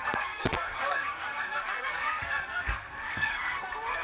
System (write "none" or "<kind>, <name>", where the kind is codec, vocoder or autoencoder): codec, SNAC